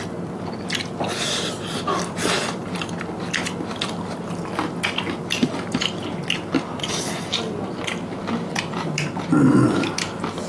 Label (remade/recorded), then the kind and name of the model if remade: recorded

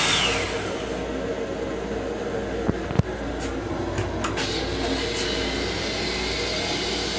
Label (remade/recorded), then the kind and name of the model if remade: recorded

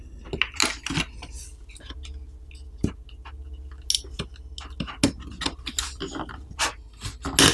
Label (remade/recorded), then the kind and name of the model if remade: recorded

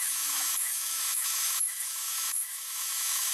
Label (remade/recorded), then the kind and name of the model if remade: remade, autoencoder, DAC-VAE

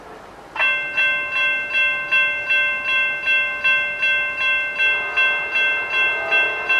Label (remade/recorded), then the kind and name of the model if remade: recorded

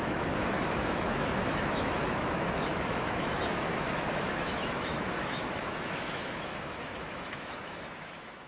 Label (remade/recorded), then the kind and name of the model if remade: remade, autoencoder, DAC-VAE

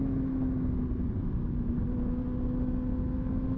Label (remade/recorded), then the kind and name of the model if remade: recorded